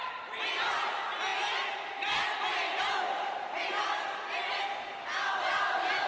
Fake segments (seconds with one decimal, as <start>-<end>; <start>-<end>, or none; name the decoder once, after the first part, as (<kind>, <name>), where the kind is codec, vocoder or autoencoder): none